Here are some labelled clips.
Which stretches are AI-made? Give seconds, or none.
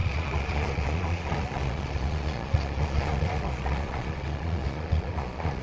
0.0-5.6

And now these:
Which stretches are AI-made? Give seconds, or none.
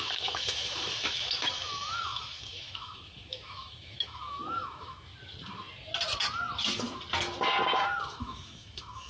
0.0-5.1; 8.1-9.1